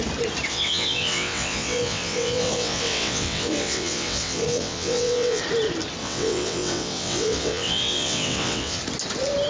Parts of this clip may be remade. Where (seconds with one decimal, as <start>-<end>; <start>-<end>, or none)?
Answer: 0.5-5.4; 6.0-8.8